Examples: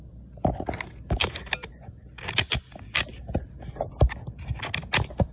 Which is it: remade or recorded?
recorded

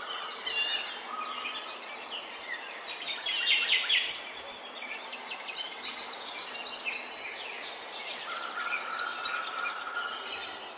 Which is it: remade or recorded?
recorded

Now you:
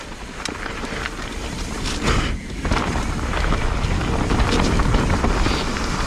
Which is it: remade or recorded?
recorded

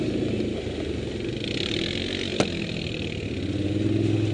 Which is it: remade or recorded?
recorded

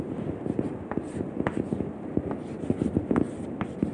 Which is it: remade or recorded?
recorded